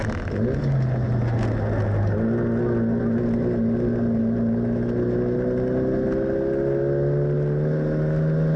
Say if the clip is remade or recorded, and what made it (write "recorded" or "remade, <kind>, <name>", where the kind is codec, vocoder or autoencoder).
recorded